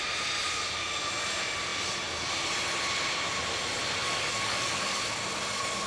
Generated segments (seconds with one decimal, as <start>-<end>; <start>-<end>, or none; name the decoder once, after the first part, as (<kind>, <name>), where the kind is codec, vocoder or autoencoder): 4.0-5.0 (codec, DAC)